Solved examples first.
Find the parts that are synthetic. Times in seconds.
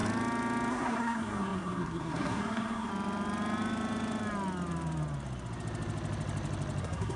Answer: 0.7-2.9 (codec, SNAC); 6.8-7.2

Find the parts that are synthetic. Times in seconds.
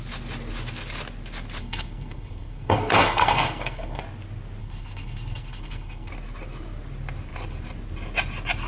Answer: 1.6-4.0 (codec, SNAC); 4.6-6.1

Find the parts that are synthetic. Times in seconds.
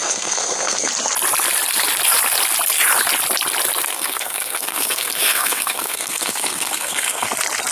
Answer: 0.0-0.9 (codec, SNAC); 3.9-7.3